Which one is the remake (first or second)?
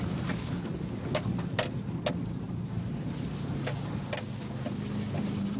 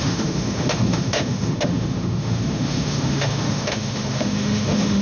second